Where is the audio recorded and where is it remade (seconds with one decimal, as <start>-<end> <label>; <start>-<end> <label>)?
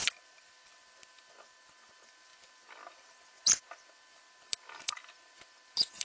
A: 0.0-6.0 recorded